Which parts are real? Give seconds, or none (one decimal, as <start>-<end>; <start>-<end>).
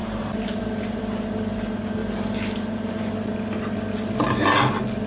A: 1.0-2.0; 3.1-5.1